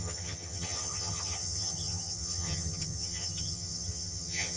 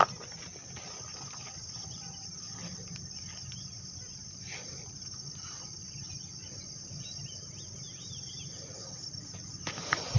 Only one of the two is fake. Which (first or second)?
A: first